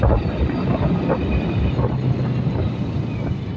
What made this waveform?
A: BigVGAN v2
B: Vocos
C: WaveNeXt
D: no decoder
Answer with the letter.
D